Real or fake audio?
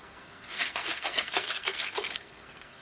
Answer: fake